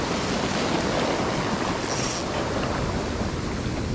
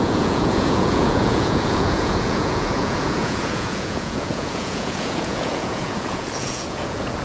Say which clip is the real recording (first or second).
first